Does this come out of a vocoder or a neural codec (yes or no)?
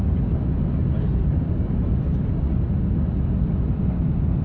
no